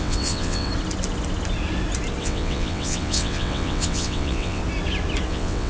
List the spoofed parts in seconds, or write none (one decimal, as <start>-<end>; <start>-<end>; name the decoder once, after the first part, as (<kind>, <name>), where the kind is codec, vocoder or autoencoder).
0.0-0.7 (vocoder, WaveNeXt); 2.2-4.6; 5.3-5.7